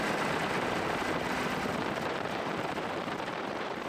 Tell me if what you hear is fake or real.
fake